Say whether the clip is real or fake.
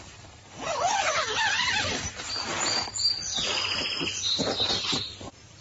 real